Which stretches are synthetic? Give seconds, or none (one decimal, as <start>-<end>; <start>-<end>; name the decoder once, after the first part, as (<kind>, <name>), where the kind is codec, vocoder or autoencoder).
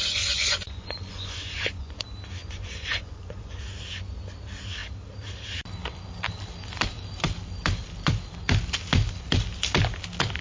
0.0-2.0 (vocoder, Vocos); 2.4-3.6